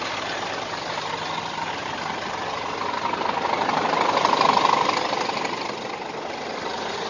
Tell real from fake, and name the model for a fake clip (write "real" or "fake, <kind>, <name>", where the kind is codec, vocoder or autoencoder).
real